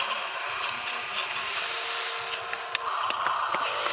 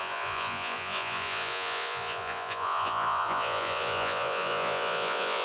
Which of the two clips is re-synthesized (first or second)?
second